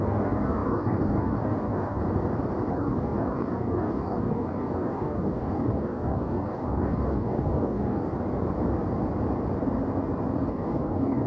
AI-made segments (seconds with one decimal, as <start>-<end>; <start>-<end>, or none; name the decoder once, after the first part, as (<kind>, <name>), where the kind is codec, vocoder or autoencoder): 0.0-2.0 (codec, DAC); 2.7-8.1; 10.5-11.3